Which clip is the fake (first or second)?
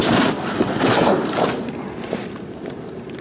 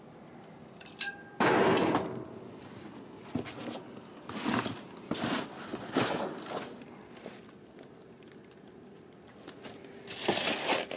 first